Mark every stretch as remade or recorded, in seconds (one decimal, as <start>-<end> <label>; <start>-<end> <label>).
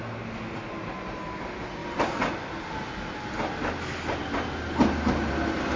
0.0-5.8 recorded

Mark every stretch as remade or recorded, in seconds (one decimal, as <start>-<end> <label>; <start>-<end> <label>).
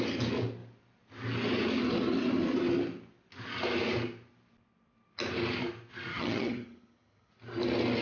0.0-6.1 recorded; 6.1-7.3 remade; 7.3-8.0 recorded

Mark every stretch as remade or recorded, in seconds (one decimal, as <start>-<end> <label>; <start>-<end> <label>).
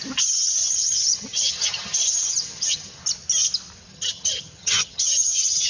0.0-0.6 recorded; 0.6-3.0 remade; 3.0-3.9 recorded; 3.9-5.7 remade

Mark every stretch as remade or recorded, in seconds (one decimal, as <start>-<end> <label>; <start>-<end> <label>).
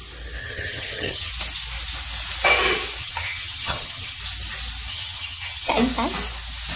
0.0-0.4 recorded; 0.4-1.3 remade; 1.3-3.0 recorded; 3.0-4.2 remade; 4.2-4.9 recorded; 4.9-5.7 remade; 5.7-6.8 recorded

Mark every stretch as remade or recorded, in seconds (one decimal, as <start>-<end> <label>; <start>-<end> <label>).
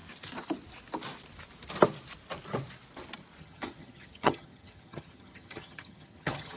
0.0-3.4 recorded; 3.4-6.6 remade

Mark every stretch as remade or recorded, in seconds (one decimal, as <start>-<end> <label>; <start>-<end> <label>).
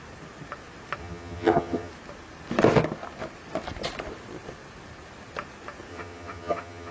0.0-1.0 recorded; 1.0-1.9 remade; 1.9-5.9 recorded; 5.9-6.9 remade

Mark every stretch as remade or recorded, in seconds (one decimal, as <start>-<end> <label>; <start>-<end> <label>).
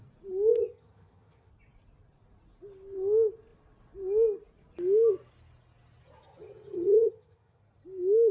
0.0-0.5 recorded; 0.5-1.5 remade; 1.5-6.3 recorded; 6.3-7.6 remade; 7.6-8.3 recorded